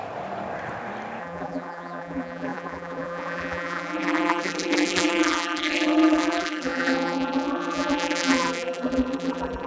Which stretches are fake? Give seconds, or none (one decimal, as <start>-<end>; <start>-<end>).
1.2-9.7